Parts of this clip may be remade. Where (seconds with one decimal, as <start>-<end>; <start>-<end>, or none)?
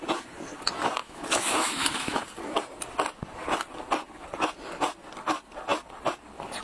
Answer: 1.0-2.2